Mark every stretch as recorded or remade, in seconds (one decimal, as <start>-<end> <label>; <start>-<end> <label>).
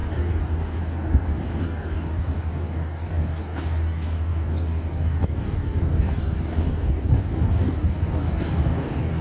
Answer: 0.0-9.2 remade